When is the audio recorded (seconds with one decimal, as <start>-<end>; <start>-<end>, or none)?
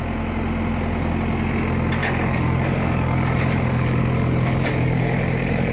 0.0-2.0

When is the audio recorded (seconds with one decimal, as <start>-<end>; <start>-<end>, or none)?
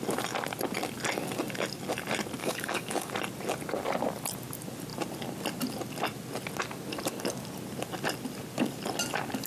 0.0-2.4; 3.1-9.5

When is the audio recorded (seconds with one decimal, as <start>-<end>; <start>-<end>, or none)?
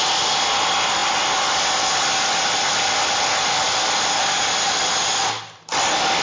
0.0-6.2